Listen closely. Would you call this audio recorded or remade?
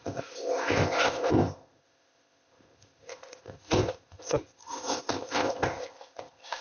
remade